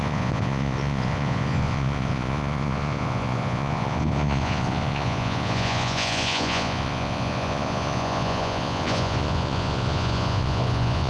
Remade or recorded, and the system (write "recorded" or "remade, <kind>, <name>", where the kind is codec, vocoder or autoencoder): remade, vocoder, Vocos